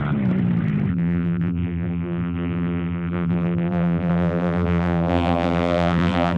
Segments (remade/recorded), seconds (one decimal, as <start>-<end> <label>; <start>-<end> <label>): 0.0-0.9 recorded; 0.9-6.4 remade